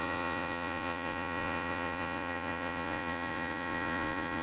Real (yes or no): no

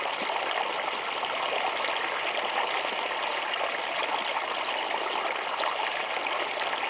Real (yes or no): yes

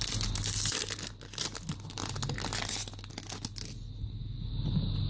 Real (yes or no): yes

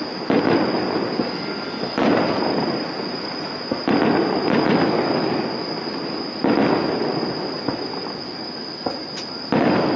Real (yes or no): yes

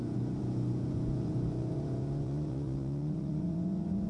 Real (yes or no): no